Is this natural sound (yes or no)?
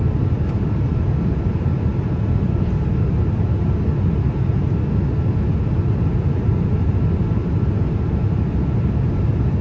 yes